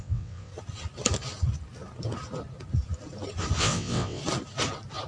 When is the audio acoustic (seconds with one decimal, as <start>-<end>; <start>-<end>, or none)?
0.5-3.6; 4.2-5.1